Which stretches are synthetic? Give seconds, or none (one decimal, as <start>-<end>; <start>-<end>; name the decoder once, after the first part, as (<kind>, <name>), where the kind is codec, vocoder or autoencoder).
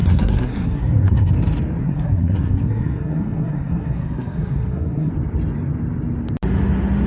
0.0-1.3 (codec, SNAC); 1.8-5.1